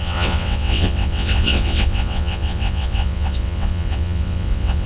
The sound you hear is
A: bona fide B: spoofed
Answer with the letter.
B